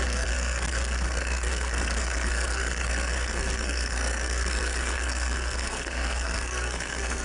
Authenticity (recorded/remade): remade